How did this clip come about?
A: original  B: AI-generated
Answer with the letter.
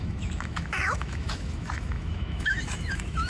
B